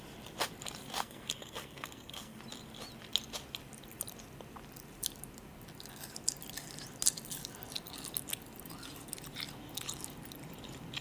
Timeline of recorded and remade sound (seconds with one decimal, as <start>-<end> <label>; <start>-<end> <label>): 0.0-1.0 recorded; 1.0-2.4 remade; 2.4-11.0 recorded